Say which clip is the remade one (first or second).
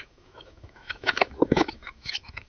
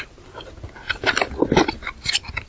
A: first